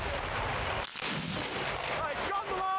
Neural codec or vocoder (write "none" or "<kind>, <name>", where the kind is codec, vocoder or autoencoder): none